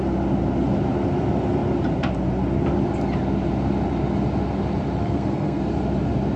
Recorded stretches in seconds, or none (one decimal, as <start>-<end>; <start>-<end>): 0.0-5.0; 5.6-6.4